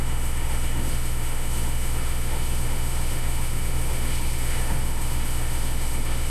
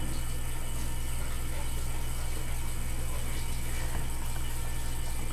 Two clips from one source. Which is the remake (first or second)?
first